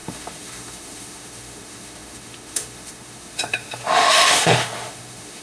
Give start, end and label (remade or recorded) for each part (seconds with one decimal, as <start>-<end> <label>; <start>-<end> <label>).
0.0-5.4 remade

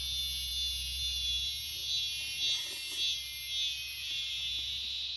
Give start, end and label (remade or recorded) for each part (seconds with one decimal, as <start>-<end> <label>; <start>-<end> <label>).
0.0-5.2 recorded

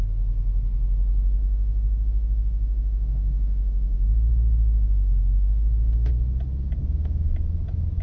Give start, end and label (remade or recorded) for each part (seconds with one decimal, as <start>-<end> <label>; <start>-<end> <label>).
0.0-1.4 recorded; 1.4-6.1 remade; 6.1-6.8 recorded; 6.8-7.3 remade; 7.3-8.0 recorded

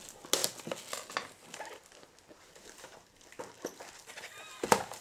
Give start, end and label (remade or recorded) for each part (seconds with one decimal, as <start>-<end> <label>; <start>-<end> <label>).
0.0-5.0 recorded